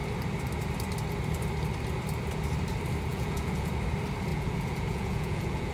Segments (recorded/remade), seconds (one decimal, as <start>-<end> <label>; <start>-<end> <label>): 0.0-3.1 recorded; 3.1-3.7 remade; 3.7-4.3 recorded; 4.3-5.7 remade